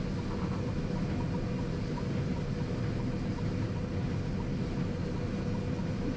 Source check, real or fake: real